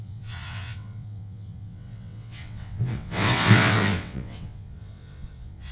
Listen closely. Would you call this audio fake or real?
fake